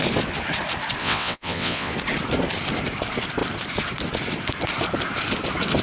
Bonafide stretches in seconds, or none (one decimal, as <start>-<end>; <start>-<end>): 0.0-1.0; 1.9-5.8